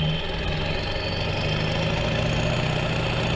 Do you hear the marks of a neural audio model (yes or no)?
no